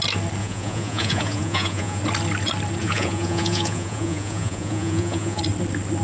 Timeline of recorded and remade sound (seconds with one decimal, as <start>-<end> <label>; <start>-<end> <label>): 0.0-0.4 recorded; 0.4-2.0 remade; 2.0-2.8 recorded; 2.8-5.4 remade; 5.4-6.0 recorded